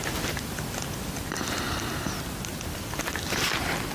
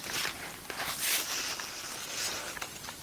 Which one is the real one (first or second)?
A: first